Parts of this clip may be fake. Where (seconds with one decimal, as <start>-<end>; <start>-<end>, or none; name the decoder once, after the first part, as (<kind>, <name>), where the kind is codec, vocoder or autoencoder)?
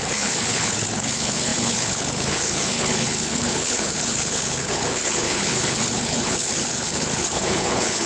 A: 0.0-8.1 (codec, HILCodec)